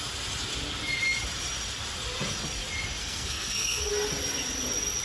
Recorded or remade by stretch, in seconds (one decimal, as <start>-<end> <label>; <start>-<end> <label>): 0.0-3.0 recorded; 3.0-3.9 remade; 3.9-5.0 recorded